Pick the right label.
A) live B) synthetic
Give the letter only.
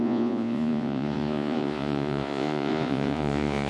B